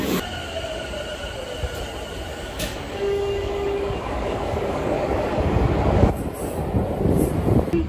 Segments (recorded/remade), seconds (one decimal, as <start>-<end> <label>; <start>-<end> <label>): 0.0-2.3 recorded; 2.3-6.2 remade; 6.2-7.9 recorded